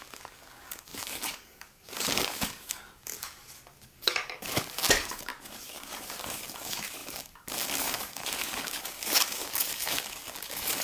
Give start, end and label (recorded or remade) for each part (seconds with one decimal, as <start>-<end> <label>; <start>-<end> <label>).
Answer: 0.0-10.8 remade